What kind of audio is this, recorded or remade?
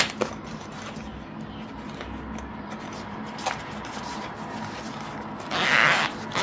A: recorded